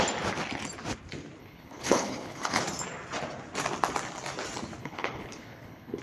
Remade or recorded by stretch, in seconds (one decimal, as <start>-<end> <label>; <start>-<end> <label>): 0.0-1.4 recorded; 1.4-2.6 remade; 2.6-4.8 recorded; 4.8-6.0 remade